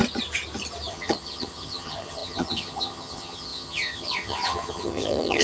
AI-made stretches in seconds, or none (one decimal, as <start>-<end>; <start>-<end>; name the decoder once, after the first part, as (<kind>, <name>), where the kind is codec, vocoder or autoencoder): 0.9-5.4 (vocoder, HiFi-GAN)